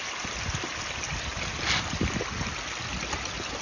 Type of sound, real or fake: real